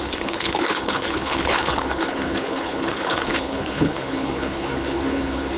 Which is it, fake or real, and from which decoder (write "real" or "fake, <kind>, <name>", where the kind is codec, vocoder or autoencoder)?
fake, codec, HILCodec